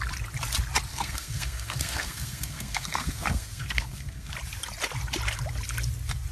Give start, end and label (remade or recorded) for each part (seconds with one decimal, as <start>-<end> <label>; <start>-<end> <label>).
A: 0.0-0.9 recorded; 0.9-4.3 remade; 4.3-6.3 recorded